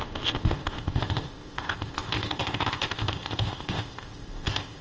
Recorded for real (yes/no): no